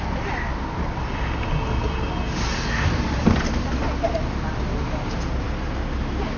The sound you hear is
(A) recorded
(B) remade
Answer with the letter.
A